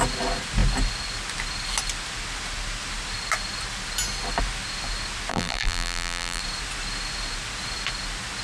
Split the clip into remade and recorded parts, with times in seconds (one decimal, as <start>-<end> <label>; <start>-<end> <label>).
0.0-5.3 recorded; 5.3-6.4 remade; 6.4-8.4 recorded